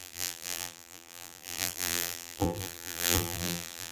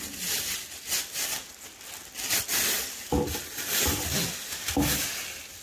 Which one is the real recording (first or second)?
second